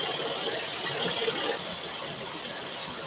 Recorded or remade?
recorded